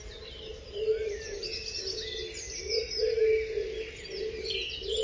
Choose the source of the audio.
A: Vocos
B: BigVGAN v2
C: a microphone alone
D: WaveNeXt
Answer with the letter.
C